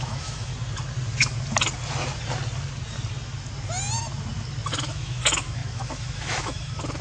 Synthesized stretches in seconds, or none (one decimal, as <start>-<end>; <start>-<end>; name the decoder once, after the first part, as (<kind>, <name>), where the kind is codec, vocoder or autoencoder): 0.0-0.5 (autoencoder, DAC-VAE); 4.7-7.0